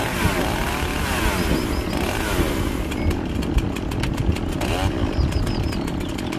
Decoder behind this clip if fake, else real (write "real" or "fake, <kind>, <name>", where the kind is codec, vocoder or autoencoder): real